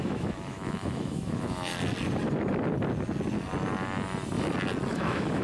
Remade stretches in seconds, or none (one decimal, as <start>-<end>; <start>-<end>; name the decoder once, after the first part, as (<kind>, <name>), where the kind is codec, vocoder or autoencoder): 0.0-1.7 (autoencoder, DAC-VAE); 4.9-5.4